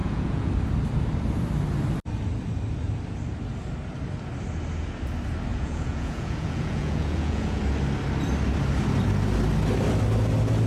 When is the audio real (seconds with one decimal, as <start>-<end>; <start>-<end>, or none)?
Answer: 0.5-5.5; 7.6-10.7